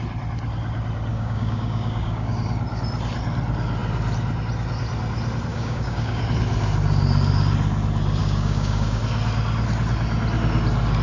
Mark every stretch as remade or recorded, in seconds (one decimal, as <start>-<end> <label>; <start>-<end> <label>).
0.0-1.1 recorded; 1.1-2.3 remade; 2.3-5.5 recorded; 5.5-6.2 remade; 6.2-8.2 recorded; 8.2-9.0 remade; 9.0-11.0 recorded